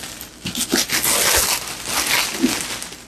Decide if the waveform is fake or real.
real